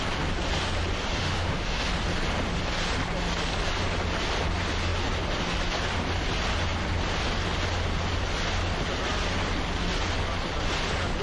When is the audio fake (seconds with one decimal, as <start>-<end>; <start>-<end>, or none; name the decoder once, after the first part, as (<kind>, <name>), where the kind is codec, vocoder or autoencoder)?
1.1-1.9 (autoencoder, DAC-VAE)